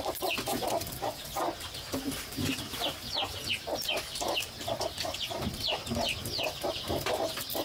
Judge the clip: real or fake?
real